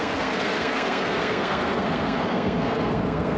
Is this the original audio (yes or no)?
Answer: no